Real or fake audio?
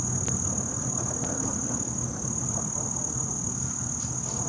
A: real